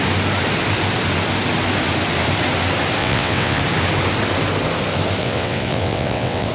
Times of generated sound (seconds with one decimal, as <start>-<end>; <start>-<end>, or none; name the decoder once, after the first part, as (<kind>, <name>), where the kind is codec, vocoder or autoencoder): 3.0-3.6 (vocoder, WaveNeXt); 5.2-6.5